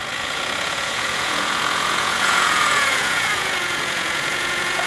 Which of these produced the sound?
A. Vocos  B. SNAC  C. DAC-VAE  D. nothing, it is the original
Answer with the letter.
A